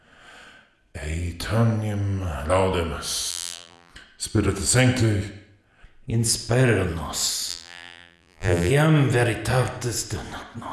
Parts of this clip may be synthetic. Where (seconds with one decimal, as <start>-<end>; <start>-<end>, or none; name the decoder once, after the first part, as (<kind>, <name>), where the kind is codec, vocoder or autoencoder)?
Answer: 3.3-3.9 (vocoder, BigVGAN v2); 7.5-8.7

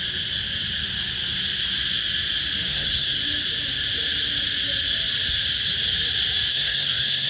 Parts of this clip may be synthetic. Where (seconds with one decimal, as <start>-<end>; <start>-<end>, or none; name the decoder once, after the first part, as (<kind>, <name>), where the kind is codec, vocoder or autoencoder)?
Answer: 2.7-3.2 (codec, SNAC); 6.5-7.3